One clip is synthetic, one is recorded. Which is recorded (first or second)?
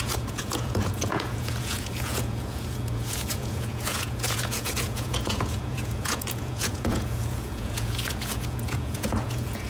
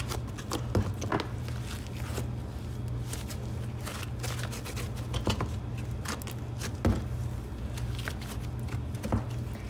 second